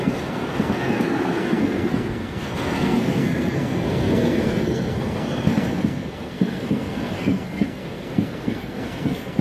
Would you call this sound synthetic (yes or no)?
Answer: yes